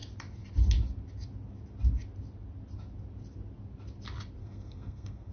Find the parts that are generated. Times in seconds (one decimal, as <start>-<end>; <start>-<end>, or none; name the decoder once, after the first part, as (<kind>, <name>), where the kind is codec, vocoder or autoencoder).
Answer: 4.4-5.3 (codec, SNAC)